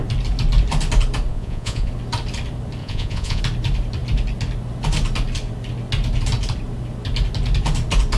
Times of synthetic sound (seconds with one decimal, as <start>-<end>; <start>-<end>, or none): 1.3-1.9; 2.8-3.4